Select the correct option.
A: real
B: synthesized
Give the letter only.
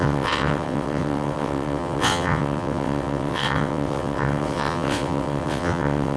B